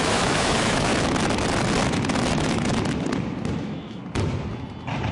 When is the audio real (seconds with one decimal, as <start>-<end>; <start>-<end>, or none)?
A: 0.9-3.6; 4.0-5.1